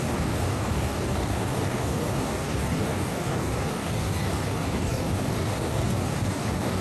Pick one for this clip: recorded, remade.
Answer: remade